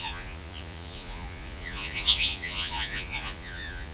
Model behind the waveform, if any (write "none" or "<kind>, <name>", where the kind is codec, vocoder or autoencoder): vocoder, Vocos